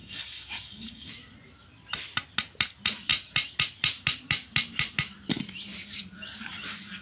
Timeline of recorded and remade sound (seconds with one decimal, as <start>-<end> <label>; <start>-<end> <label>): 0.0-1.1 remade; 1.1-7.0 recorded